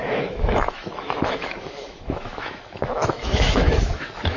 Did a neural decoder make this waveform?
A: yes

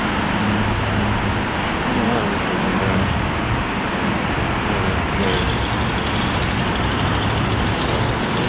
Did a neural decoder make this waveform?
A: no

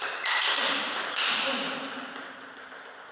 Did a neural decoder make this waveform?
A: yes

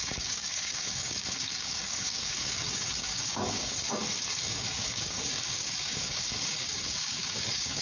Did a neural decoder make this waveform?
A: yes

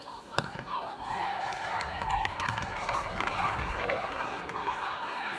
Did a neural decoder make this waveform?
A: yes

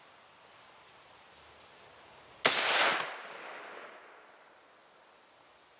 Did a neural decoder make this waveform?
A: no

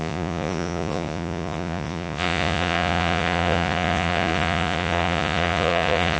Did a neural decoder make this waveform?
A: yes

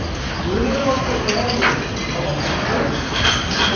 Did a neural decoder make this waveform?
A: no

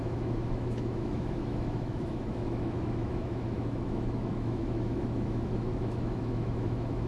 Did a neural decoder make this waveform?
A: yes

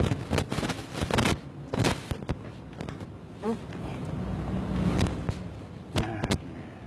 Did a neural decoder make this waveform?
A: no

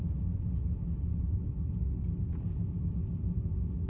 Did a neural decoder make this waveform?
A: no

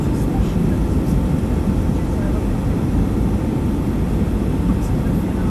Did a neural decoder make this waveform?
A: no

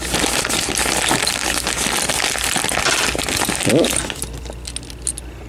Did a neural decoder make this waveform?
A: no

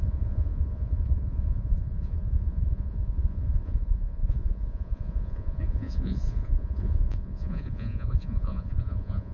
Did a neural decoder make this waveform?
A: yes